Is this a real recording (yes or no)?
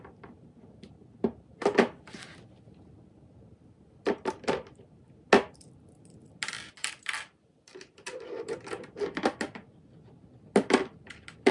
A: yes